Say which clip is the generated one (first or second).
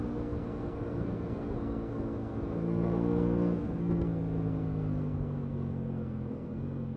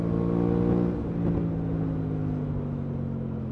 first